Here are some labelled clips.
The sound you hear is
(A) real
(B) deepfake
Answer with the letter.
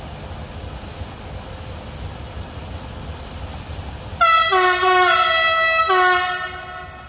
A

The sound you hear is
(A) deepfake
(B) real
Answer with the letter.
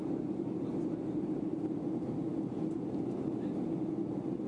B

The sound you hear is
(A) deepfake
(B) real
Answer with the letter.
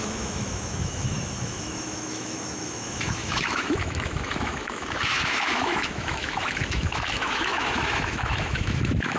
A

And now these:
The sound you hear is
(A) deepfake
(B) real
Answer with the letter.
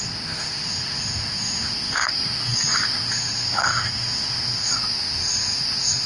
A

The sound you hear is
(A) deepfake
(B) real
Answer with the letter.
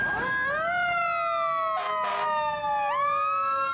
B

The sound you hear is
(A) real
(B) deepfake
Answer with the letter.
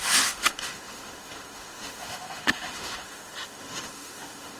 B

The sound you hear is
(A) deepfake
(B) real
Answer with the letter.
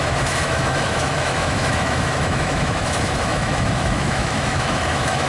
A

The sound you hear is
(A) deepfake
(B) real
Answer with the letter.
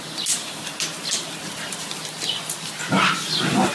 B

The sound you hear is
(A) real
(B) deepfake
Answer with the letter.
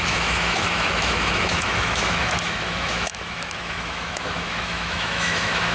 B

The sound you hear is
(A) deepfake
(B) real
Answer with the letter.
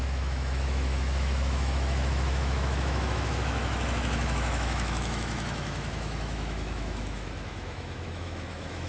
A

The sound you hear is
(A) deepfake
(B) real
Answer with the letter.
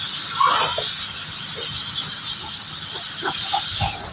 B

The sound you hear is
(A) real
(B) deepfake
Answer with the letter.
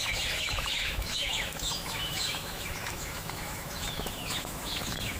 B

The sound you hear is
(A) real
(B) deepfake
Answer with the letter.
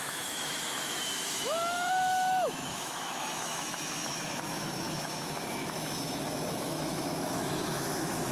B